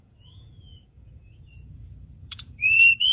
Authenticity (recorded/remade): remade